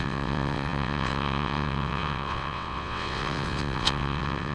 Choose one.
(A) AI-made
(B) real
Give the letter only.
A